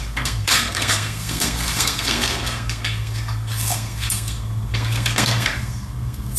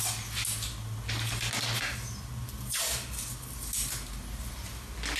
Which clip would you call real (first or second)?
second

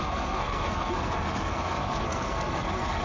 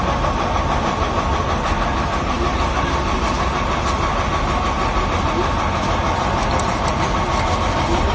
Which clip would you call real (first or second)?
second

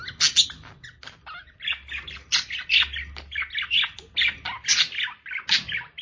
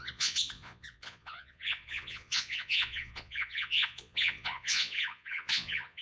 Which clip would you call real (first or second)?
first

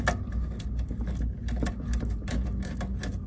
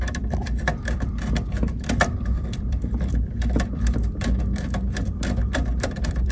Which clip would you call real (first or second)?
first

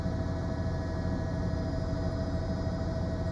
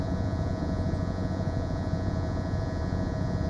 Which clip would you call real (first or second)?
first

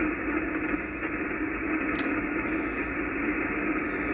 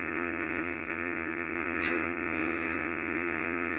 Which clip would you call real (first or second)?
first